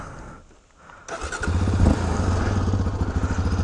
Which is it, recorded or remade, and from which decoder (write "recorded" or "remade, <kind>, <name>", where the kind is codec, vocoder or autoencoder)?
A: recorded